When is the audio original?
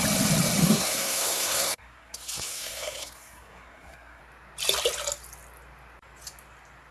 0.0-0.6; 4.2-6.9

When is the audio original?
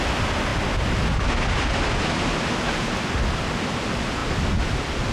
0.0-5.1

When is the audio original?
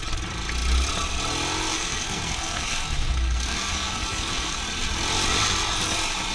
0.0-1.7; 4.6-6.3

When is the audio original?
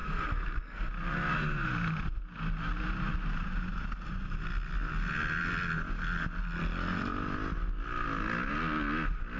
0.9-9.4